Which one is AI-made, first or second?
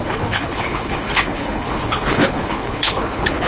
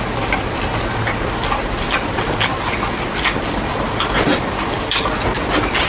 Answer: first